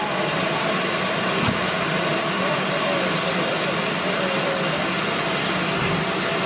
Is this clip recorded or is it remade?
recorded